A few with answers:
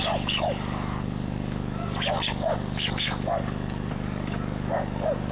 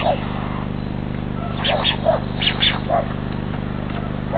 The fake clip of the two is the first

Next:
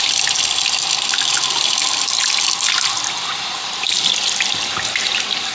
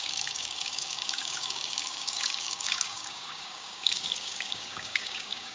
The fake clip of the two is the second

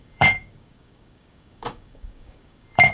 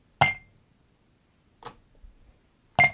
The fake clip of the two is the first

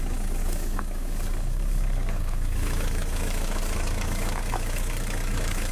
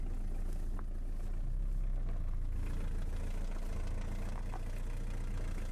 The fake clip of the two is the first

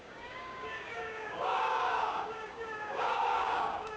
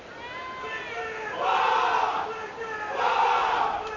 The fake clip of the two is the first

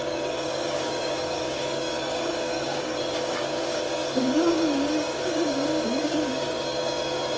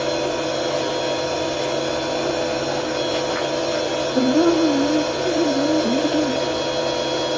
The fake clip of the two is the first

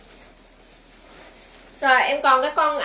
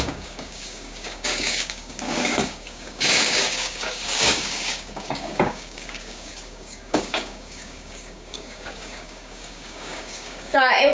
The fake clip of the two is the second